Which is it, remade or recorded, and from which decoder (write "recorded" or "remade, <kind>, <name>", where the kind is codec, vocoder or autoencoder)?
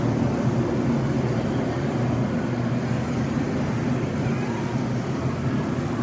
recorded